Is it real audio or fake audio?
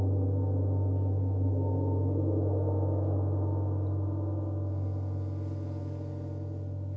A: real